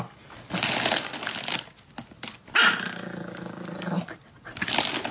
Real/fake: real